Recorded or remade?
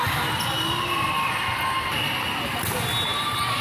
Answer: recorded